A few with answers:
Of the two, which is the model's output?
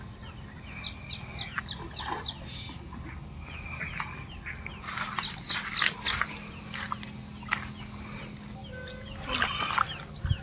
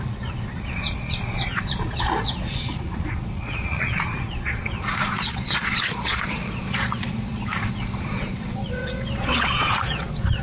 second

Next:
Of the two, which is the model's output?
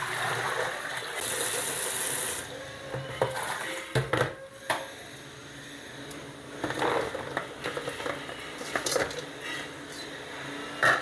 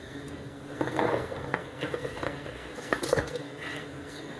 second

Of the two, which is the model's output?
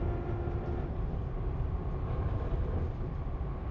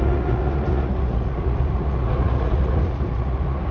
second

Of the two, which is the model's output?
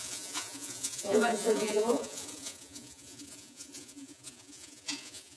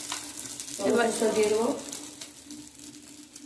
first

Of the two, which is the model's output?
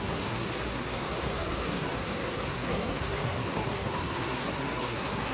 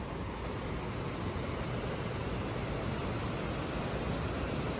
first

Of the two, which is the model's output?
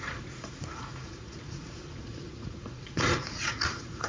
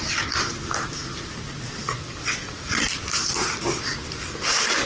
first